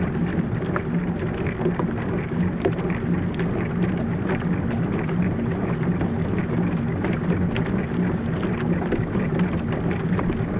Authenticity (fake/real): real